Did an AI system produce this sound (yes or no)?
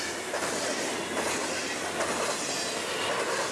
no